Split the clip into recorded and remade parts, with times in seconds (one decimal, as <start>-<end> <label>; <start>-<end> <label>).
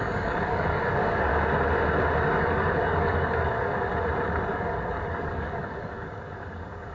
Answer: 0.0-1.3 remade; 1.3-2.4 recorded; 2.4-3.9 remade; 3.9-4.5 recorded; 4.5-6.9 remade